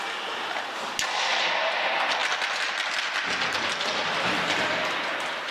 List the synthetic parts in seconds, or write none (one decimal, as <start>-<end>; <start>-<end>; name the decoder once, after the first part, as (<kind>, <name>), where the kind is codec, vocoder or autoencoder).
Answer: none